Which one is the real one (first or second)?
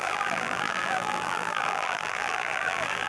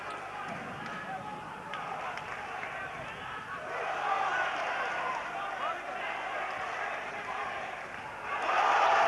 second